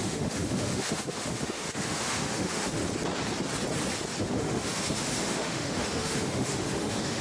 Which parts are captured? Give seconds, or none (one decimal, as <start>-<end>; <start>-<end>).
2.8-4.2